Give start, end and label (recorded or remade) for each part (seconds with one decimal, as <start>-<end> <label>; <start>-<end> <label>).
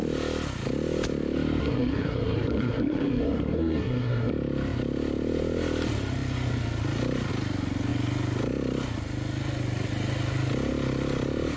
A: 0.0-1.6 recorded; 1.6-4.3 remade; 4.3-11.6 recorded